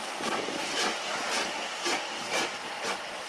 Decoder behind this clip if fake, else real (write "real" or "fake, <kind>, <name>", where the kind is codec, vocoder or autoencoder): real